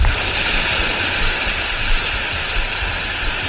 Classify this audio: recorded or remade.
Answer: recorded